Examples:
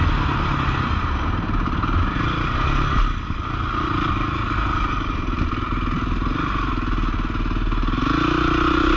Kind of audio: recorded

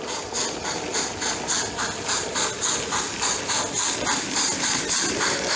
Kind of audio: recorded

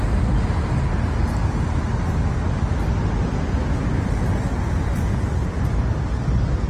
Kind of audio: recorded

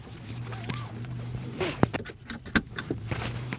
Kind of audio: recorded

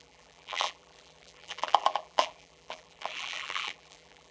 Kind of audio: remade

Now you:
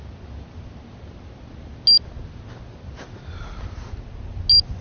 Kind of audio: recorded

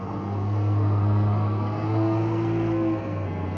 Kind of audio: remade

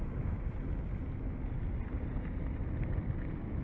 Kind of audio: recorded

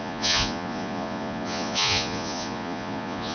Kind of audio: remade